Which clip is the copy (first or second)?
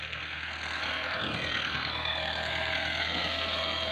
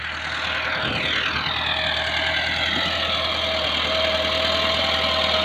first